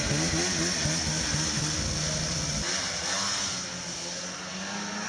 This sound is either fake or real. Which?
real